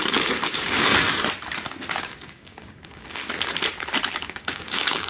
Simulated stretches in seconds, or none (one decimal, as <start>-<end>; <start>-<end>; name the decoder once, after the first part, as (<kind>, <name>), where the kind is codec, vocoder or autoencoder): 0.0-0.9 (codec, DAC); 2.0-3.2; 4.2-5.1